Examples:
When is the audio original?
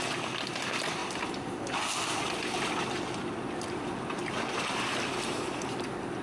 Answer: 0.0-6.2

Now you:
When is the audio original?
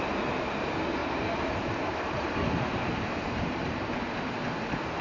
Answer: 0.0-1.0; 4.0-5.0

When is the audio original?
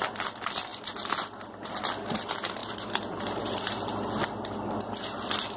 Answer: 0.0-5.6